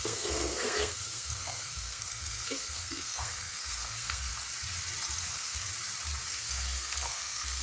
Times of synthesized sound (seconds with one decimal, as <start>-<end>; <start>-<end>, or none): 0.0-4.3; 5.3-5.7; 6.3-7.6